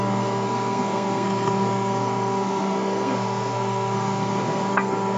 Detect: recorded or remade remade